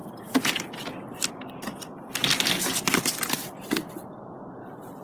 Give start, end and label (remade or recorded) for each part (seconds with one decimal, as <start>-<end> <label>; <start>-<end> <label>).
0.0-2.2 remade; 2.2-2.8 recorded; 2.8-5.0 remade